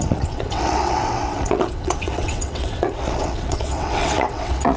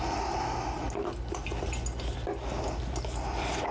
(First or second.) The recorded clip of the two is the second